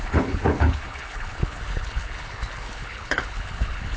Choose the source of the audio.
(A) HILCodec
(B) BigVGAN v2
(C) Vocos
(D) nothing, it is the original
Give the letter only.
A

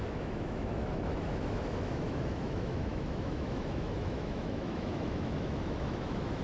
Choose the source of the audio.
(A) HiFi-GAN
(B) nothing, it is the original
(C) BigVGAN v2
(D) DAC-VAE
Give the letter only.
D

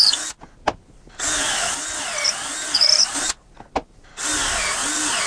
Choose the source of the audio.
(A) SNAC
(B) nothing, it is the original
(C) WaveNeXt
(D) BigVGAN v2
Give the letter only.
B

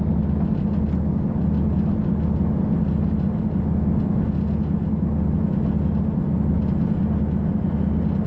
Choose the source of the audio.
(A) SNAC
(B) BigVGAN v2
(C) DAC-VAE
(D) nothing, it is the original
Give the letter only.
D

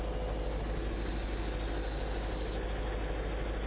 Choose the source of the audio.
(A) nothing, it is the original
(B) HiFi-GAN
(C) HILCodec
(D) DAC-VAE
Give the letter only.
A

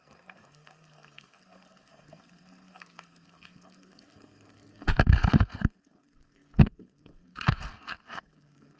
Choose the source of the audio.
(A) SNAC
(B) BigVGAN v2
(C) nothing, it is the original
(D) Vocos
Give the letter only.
A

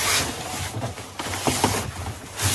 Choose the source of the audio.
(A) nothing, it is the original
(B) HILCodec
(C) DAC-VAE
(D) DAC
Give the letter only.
A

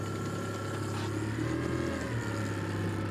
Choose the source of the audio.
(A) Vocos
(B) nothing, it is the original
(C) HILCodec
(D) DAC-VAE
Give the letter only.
B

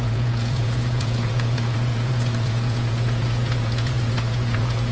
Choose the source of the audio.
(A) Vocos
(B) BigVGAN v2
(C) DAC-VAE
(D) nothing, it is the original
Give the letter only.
A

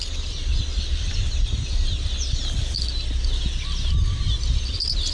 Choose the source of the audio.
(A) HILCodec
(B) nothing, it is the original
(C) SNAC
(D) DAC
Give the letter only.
B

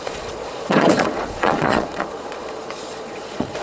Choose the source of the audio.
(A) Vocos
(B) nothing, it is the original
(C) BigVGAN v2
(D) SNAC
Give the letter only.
A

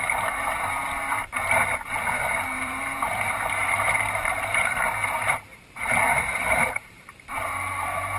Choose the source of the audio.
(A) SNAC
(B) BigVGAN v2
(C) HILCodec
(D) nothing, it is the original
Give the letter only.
B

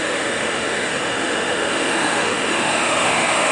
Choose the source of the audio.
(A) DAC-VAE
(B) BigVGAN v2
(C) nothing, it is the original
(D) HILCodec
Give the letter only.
A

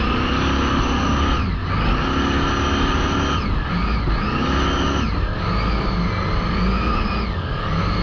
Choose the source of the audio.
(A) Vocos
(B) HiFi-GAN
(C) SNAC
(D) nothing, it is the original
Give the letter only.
D